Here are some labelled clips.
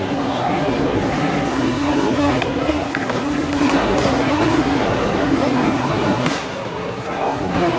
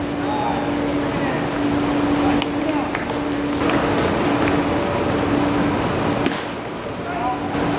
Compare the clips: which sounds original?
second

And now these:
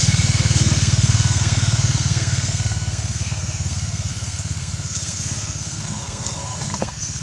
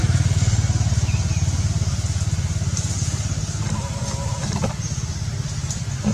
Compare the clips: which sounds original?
second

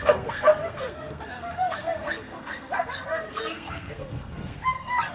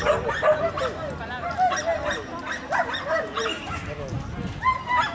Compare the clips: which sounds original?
second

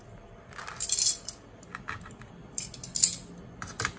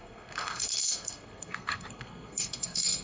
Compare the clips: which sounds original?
first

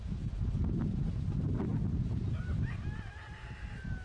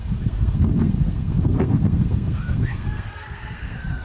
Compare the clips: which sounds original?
first